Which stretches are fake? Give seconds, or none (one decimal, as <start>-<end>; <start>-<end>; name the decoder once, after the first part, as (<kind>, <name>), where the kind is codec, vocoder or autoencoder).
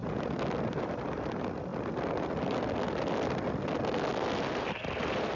none